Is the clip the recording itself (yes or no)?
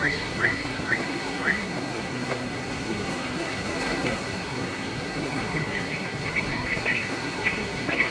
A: no